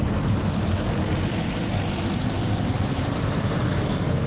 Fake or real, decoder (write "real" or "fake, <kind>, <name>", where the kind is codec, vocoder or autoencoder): fake, vocoder, BigVGAN v2